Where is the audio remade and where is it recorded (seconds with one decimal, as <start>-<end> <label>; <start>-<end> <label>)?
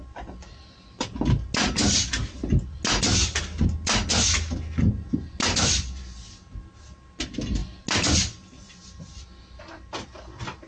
0.0-10.7 recorded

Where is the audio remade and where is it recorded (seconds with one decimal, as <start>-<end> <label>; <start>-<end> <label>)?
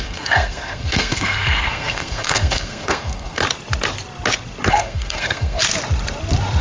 0.0-3.4 remade; 3.4-4.7 recorded; 4.7-5.6 remade; 5.6-6.6 recorded